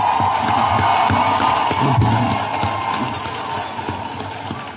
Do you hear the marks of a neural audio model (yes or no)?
no